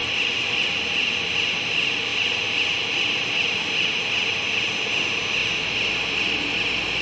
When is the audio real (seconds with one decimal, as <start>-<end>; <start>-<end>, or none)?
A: 0.0-7.0